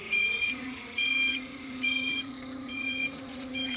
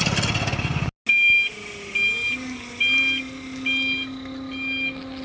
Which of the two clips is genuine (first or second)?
second